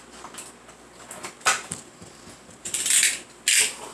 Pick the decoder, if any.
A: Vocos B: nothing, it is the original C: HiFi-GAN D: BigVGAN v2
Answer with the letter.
B